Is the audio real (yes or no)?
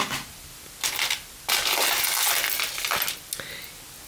yes